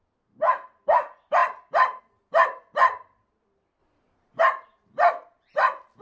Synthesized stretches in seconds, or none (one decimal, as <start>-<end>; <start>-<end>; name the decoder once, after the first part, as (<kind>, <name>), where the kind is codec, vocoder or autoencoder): none